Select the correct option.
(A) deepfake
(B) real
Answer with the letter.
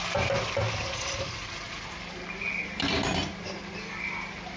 B